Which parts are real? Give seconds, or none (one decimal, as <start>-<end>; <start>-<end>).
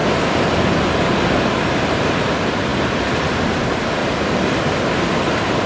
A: 0.0-0.8; 2.7-3.4; 4.0-4.8